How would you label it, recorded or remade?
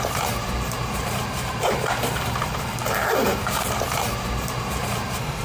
remade